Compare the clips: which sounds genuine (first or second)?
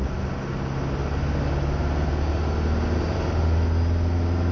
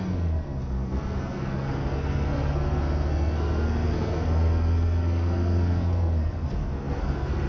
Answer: first